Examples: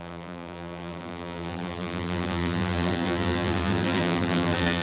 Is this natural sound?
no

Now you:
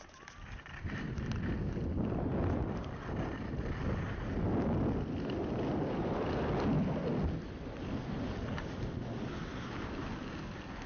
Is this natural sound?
yes